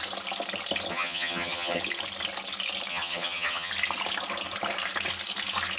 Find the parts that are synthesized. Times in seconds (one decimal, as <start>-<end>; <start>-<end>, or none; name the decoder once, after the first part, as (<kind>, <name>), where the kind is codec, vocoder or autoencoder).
0.9-1.8 (vocoder, HiFi-GAN); 2.9-3.7